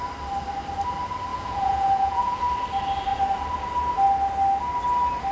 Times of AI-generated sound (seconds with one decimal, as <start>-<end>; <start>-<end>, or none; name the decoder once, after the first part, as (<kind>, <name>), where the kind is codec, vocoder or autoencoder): 1.3-2.4 (vocoder, Vocos)